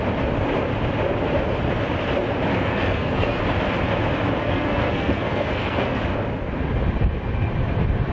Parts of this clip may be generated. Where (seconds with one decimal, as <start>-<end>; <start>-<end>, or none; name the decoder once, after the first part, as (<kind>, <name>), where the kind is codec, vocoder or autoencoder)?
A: 2.5-3.4 (codec, SNAC); 4.4-6.0